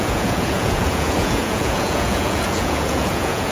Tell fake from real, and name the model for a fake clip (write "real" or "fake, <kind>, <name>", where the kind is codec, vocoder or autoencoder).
fake, vocoder, Vocos